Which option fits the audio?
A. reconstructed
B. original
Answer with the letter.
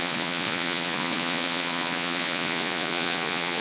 A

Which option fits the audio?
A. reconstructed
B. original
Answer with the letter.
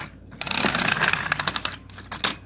B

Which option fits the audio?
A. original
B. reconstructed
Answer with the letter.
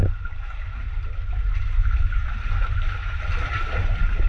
A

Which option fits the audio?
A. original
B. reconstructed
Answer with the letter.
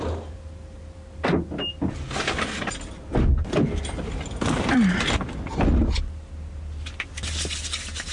A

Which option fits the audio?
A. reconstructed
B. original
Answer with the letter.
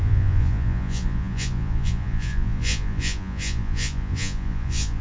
A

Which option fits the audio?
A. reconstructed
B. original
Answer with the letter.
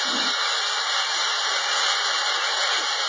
B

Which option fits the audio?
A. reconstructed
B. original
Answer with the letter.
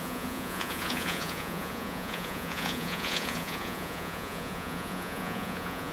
A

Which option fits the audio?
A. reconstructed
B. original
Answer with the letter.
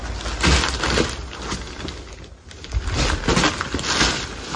B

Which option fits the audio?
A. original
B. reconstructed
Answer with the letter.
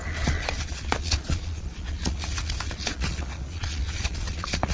B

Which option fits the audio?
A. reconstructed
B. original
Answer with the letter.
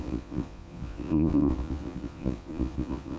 A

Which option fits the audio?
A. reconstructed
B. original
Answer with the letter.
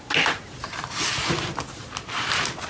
B